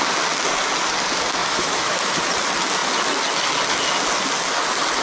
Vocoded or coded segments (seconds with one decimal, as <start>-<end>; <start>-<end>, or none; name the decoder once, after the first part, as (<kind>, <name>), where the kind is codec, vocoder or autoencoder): 1.4-2.2 (autoencoder, DAC-VAE)